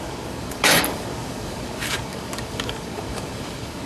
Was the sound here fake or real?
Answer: fake